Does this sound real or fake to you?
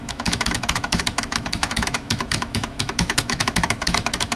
fake